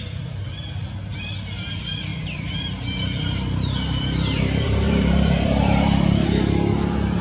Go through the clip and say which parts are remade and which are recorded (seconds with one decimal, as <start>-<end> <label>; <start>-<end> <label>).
0.0-2.1 recorded; 2.1-6.4 remade; 6.4-7.2 recorded